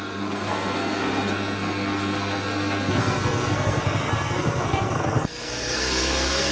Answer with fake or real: fake